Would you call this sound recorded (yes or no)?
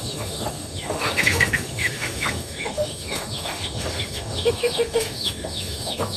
no